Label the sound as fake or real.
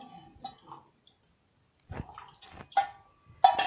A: real